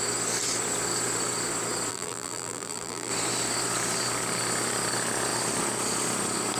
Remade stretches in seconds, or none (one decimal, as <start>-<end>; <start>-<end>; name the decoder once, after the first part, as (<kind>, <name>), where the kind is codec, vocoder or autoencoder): 1.9-3.1 (vocoder, BigVGAN v2)